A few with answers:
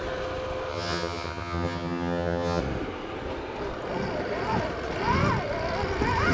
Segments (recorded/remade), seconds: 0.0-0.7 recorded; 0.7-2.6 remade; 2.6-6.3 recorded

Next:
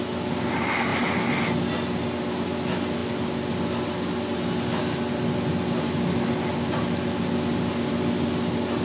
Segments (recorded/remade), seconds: 0.0-8.8 recorded

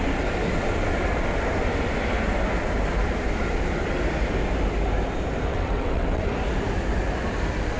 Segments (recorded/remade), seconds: 0.0-5.5 recorded; 5.5-6.2 remade; 6.2-7.8 recorded